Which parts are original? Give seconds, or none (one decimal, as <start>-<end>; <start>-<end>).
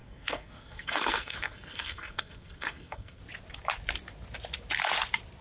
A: 3.2-5.4